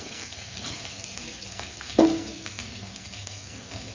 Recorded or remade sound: remade